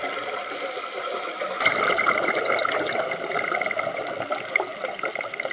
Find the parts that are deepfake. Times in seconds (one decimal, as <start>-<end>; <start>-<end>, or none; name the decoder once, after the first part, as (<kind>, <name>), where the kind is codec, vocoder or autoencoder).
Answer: none

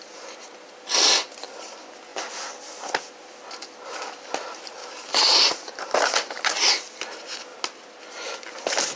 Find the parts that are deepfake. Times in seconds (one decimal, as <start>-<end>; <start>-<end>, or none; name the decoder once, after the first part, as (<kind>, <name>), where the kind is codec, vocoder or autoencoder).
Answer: 4.8-6.7 (vocoder, BigVGAN v2)

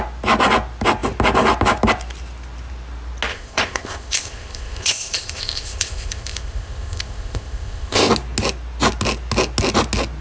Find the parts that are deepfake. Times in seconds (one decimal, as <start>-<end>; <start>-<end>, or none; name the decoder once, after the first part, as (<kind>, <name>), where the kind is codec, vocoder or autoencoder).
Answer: 3.3-8.1 (codec, ZipCodec)

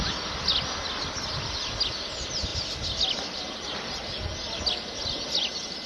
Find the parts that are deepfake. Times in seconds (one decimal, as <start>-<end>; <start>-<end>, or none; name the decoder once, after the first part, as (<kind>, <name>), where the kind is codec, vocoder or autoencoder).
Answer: none